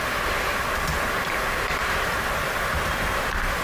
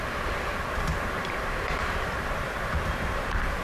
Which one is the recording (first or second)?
first